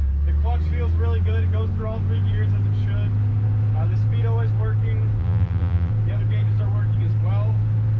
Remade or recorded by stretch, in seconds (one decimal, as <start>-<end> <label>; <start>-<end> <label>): 0.0-5.2 recorded; 5.2-5.9 remade; 5.9-8.0 recorded